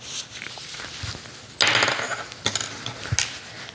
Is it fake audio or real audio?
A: real